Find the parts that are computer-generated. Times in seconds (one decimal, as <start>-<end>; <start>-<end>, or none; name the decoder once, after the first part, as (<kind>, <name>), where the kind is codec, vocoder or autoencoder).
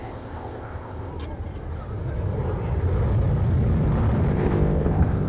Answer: 0.0-1.1 (codec, ZipCodec); 4.3-5.3